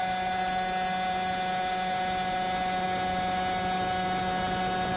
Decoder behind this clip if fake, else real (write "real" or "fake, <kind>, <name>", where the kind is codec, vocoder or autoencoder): real